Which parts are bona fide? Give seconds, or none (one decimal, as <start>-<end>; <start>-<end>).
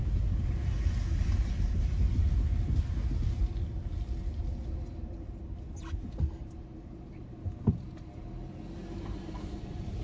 0.0-6.4; 7.2-8.8